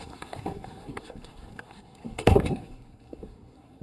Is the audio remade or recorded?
remade